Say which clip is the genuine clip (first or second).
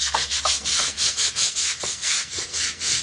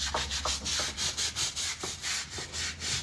second